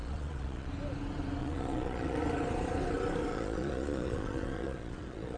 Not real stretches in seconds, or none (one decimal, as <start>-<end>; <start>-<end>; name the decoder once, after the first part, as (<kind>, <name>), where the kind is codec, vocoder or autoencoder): 0.0-0.7 (vocoder, Vocos); 1.4-2.2; 3.3-5.4